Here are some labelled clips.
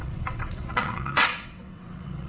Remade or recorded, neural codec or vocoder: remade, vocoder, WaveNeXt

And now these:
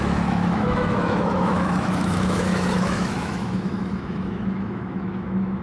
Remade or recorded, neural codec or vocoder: remade, autoencoder, DAC-VAE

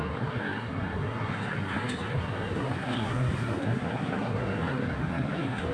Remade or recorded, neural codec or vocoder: remade, codec, SNAC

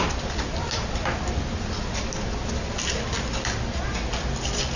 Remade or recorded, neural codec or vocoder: recorded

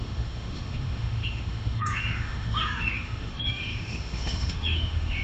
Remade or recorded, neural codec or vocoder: remade, autoencoder, DAC-VAE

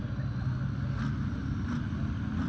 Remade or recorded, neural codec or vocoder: recorded